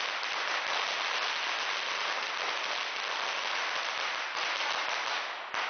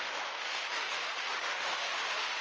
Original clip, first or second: first